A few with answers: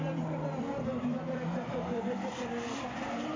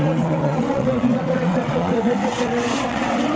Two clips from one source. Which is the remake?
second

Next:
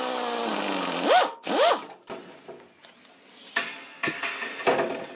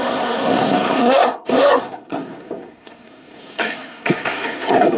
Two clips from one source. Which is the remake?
second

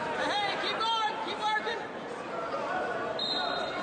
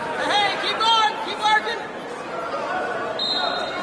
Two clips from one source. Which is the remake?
first